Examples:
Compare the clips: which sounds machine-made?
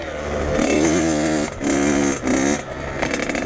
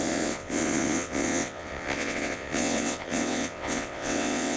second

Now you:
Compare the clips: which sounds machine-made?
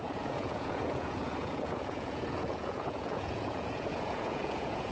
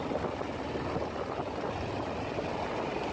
first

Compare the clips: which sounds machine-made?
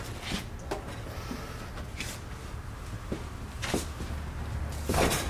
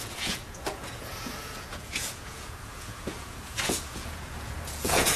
second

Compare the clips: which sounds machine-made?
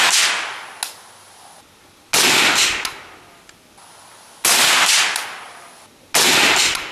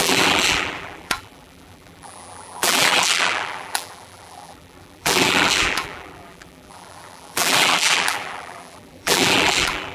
second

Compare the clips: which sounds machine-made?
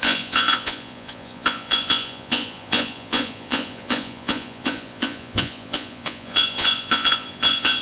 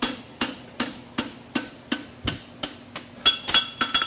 first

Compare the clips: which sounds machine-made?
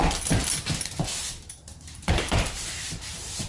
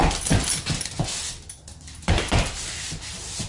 first